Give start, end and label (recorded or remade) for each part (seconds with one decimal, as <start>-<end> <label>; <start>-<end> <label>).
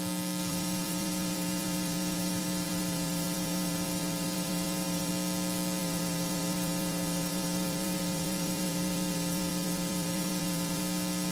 0.0-0.5 recorded; 0.5-5.1 remade; 5.1-5.8 recorded; 5.8-10.8 remade; 10.8-11.3 recorded